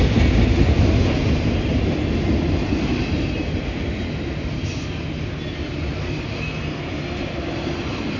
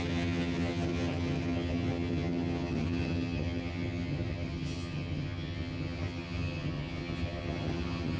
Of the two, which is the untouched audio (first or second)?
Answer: first